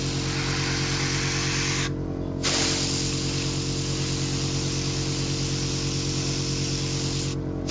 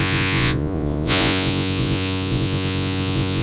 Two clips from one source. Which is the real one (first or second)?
first